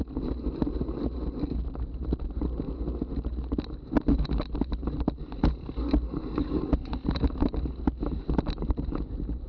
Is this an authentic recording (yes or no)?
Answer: yes